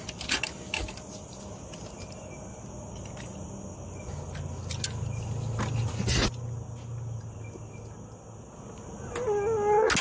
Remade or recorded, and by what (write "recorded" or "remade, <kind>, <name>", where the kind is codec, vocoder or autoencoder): recorded